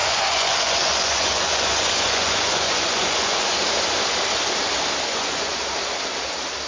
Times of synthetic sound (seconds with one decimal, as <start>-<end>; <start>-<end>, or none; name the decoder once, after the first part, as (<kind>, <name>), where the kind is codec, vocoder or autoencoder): 0.0-3.6 (vocoder, Vocos); 5.1-5.6